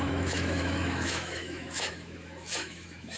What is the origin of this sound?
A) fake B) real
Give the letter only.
A